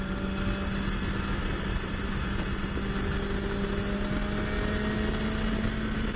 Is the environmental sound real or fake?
real